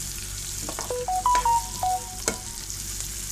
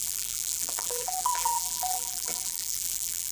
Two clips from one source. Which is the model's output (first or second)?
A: second